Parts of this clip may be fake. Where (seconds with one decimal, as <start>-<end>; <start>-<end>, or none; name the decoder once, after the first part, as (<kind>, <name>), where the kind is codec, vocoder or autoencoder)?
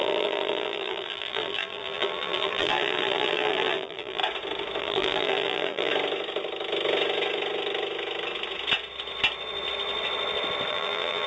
0.0-4.2 (vocoder, BigVGAN v2); 4.8-5.9; 10.7-11.3